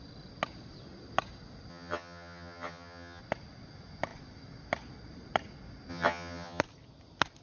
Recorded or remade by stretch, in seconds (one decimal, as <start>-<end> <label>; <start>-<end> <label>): 0.0-1.7 recorded; 1.7-3.2 remade; 3.2-5.9 recorded; 5.9-6.6 remade; 6.6-7.4 recorded